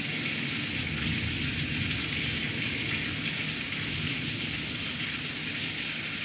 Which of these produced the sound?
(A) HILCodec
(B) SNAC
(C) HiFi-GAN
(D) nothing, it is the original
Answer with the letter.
D